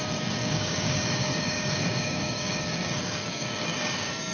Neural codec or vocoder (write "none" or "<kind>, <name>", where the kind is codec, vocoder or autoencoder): codec, DAC